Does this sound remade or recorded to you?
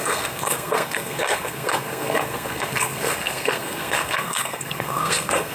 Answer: remade